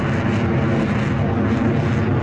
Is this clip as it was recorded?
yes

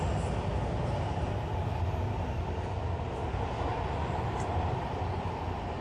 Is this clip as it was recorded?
yes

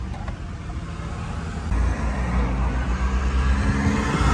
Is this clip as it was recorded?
yes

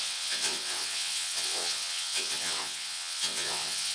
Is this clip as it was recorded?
no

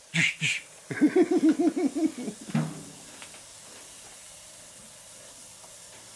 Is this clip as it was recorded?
yes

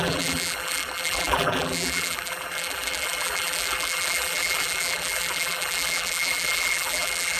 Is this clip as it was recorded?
no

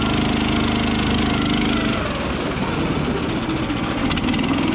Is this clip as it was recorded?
yes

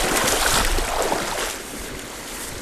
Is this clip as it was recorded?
yes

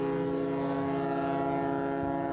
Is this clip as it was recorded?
yes